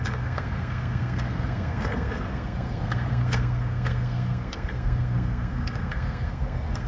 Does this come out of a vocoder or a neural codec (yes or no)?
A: yes